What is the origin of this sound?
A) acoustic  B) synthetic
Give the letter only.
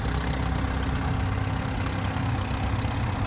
A